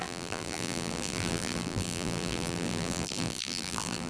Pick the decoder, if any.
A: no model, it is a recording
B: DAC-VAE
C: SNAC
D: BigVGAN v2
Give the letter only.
D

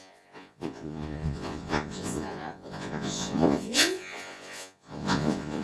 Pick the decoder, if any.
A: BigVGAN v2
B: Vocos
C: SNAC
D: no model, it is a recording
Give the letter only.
B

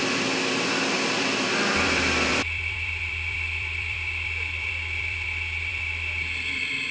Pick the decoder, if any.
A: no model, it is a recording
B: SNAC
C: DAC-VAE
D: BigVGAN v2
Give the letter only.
D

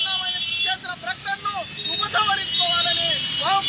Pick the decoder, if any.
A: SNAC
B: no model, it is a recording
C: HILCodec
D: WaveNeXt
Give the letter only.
B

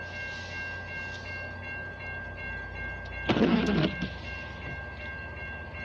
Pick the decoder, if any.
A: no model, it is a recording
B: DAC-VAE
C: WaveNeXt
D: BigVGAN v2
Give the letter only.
A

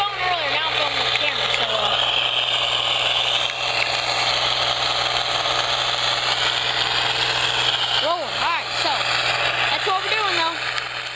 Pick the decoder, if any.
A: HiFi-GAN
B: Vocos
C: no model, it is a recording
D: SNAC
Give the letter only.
C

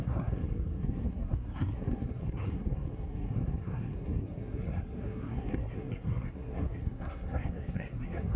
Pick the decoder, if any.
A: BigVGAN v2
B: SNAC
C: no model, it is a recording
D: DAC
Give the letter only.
B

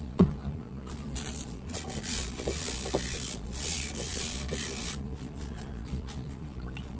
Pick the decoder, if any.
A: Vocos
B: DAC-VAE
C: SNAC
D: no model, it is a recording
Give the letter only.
A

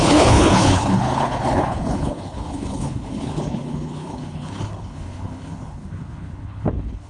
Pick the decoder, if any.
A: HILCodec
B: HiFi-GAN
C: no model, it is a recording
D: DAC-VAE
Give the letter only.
A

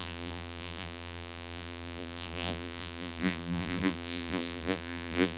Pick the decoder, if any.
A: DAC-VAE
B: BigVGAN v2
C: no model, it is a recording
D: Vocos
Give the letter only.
B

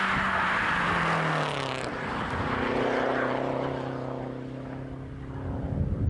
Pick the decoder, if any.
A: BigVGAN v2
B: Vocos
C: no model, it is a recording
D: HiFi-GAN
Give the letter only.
C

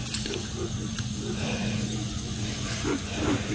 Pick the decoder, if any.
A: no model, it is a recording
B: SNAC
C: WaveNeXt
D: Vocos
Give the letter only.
D